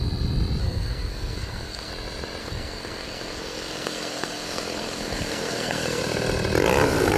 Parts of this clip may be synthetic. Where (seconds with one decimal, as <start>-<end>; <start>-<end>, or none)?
0.6-1.9; 2.4-6.0

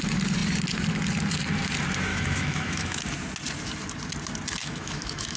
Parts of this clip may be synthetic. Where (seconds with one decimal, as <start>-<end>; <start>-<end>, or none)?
2.1-3.0; 4.6-5.4